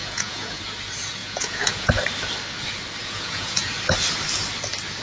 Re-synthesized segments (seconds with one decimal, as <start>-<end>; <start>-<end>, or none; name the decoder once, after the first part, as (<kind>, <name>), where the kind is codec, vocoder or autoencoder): 0.0-0.6 (vocoder, Vocos); 1.2-1.9; 3.0-3.7